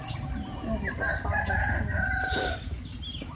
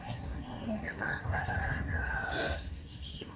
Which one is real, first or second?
first